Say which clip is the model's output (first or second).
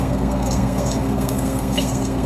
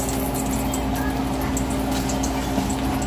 first